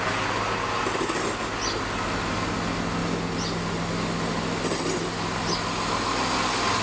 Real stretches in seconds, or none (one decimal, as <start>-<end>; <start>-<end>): 0.0-6.8